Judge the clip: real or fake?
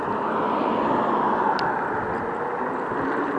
real